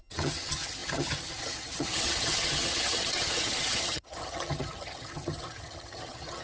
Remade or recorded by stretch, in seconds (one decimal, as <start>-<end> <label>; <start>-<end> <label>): 0.0-6.4 remade